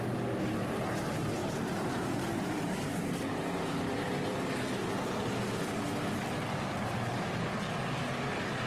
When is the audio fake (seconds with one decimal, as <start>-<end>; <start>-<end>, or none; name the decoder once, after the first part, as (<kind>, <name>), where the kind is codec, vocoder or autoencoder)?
1.4-4.1 (vocoder, BigVGAN v2)